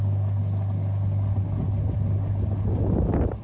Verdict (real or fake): real